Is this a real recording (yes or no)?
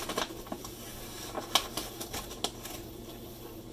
yes